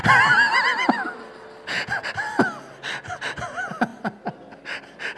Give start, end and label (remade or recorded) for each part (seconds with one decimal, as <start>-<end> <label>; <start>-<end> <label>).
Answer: 0.0-2.6 remade; 2.6-3.9 recorded; 3.9-5.2 remade